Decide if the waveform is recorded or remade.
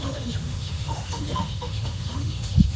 remade